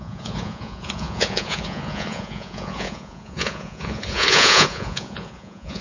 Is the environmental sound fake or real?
fake